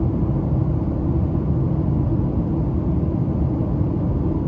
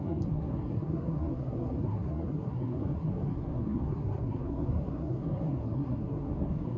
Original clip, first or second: first